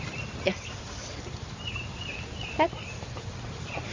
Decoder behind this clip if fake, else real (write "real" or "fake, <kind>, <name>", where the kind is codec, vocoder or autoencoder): real